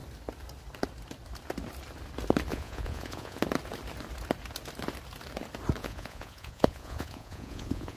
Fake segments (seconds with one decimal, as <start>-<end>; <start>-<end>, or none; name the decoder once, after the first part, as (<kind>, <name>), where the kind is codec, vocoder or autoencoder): 2.5-3.4 (vocoder, Vocos); 5.8-8.0